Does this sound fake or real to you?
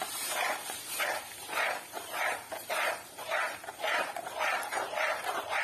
fake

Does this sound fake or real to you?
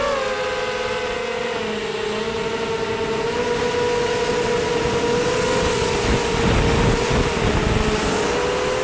real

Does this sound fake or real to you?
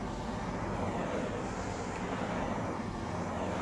real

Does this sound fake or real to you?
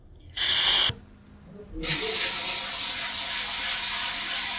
real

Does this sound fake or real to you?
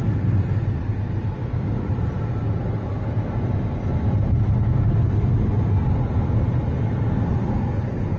real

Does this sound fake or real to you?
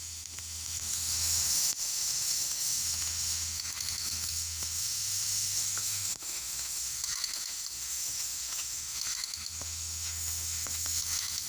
fake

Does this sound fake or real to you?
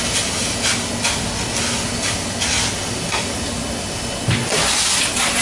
real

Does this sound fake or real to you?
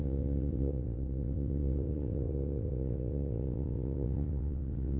fake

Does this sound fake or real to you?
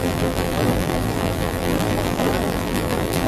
fake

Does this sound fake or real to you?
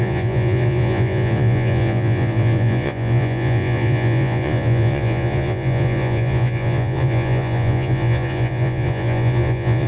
fake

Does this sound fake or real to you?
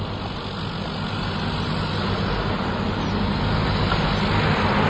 real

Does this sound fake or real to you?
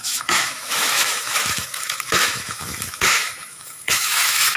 fake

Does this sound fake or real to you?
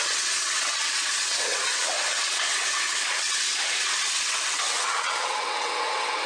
fake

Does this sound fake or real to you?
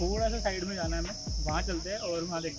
real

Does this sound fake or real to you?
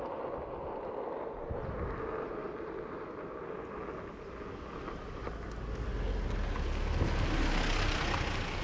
real